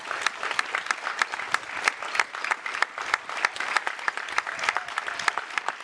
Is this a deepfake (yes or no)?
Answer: no